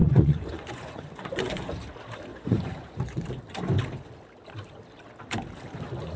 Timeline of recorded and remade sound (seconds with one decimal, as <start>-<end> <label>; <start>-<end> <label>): 0.0-1.7 remade; 1.7-2.3 recorded; 2.3-3.4 remade; 3.4-6.2 recorded